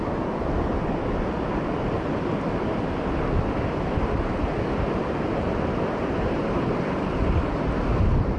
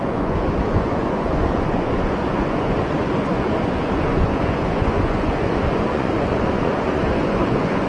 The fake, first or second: second